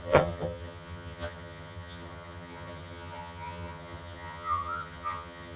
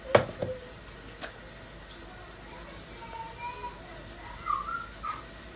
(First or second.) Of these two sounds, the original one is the second